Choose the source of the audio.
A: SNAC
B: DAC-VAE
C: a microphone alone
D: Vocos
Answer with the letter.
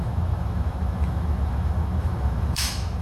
B